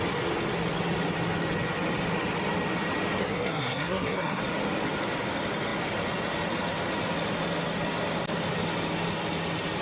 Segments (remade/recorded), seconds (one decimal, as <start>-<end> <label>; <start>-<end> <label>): 0.0-3.2 recorded; 3.2-4.4 remade; 4.4-9.8 recorded